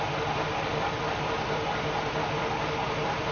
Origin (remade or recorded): recorded